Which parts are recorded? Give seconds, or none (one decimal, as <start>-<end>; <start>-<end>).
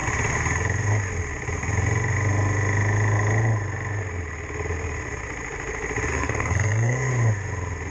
0.0-6.1; 7.1-7.9